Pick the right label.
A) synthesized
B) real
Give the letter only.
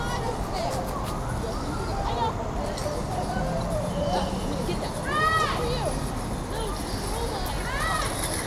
B